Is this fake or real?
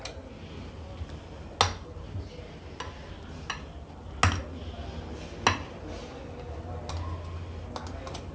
real